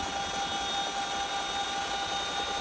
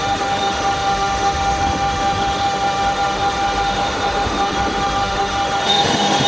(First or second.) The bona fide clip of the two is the first